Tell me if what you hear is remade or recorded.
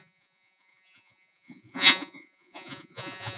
remade